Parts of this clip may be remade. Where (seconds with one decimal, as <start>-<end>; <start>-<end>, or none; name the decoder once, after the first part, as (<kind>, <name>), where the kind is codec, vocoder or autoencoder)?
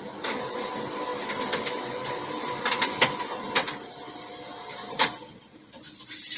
none